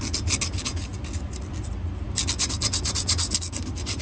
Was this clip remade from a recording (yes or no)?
no